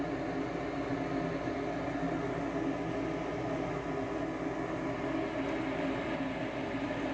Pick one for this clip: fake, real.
real